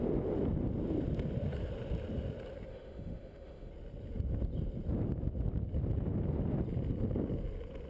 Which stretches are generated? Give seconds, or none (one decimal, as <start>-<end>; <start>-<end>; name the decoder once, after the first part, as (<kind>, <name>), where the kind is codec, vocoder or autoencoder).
2.7-3.7 (autoencoder, DAC-VAE)